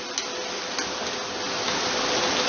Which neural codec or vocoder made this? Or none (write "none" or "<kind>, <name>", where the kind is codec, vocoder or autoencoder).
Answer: none